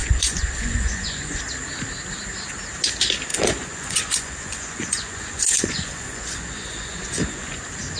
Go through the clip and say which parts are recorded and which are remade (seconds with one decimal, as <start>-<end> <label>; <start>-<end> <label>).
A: 0.0-1.4 remade; 1.4-3.3 recorded; 3.3-7.6 remade; 7.6-8.0 recorded